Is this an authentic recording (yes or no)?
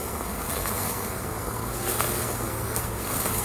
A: no